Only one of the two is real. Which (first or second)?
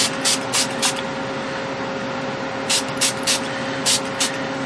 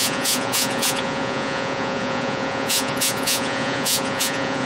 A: first